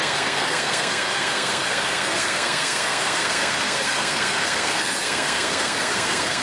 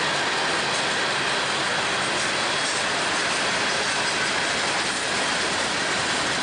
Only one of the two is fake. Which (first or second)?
first